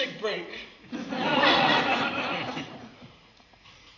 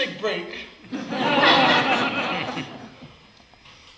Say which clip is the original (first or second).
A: second